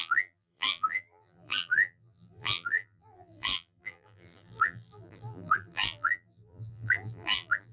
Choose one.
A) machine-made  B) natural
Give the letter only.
A